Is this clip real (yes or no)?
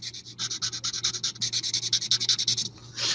yes